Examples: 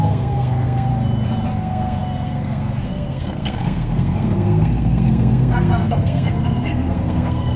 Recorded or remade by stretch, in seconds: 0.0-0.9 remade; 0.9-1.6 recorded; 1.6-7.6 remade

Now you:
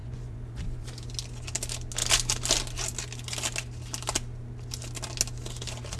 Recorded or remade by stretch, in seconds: 0.0-0.8 remade; 0.8-6.0 recorded

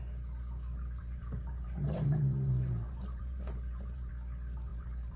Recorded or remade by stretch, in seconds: 0.0-1.0 recorded; 1.0-4.1 remade; 4.1-4.7 recorded; 4.7-5.2 remade

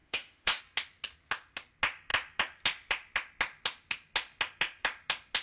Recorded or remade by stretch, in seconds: 0.0-0.6 remade; 0.6-5.4 recorded

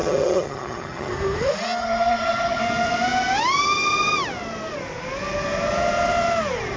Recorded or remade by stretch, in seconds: 0.0-1.1 remade; 1.1-1.8 recorded; 1.8-2.6 remade; 2.6-6.8 recorded